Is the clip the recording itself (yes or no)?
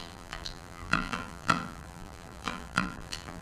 no